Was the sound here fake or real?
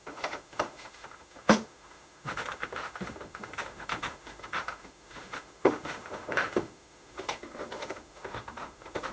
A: fake